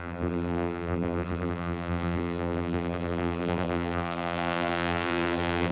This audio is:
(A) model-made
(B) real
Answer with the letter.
A